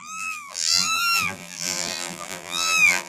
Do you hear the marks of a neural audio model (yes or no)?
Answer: yes